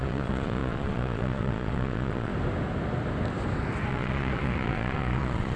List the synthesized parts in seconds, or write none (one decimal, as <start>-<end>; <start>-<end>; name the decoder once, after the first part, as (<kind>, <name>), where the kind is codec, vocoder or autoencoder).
0.0-2.3 (vocoder, Vocos); 3.9-5.6

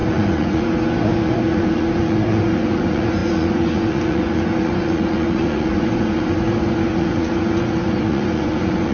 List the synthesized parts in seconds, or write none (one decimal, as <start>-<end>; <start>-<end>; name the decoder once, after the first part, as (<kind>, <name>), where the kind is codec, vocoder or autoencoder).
0.0-8.9 (vocoder, Vocos)

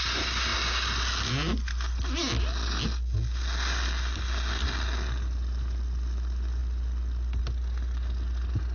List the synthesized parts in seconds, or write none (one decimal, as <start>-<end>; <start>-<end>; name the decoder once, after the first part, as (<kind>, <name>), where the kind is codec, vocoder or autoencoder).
none

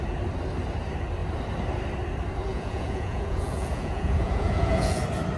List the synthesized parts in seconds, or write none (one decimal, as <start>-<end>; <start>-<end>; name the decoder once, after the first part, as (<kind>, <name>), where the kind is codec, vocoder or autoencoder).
2.5-5.0 (vocoder, Vocos)

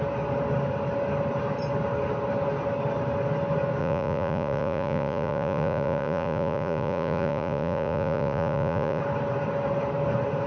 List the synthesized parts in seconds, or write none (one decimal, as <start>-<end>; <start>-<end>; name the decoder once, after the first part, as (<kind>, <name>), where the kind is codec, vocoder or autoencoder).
3.8-9.0 (vocoder, Vocos)

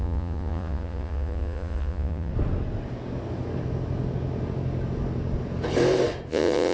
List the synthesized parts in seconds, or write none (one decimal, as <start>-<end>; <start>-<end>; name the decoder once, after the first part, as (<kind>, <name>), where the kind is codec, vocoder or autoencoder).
0.0-2.3 (vocoder, Vocos); 6.3-6.7